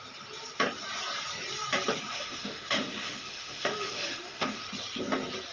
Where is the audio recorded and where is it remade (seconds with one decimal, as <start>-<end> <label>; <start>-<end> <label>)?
0.0-2.1 recorded; 2.1-4.6 remade; 4.6-5.5 recorded